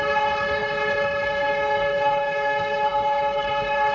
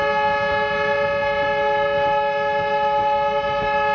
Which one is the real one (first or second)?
second